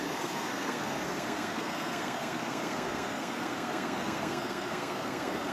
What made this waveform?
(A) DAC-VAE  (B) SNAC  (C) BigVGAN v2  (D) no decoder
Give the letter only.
B